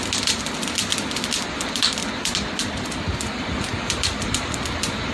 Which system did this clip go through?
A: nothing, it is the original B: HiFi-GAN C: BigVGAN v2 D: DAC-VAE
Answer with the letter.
A